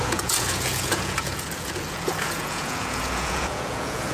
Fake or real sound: fake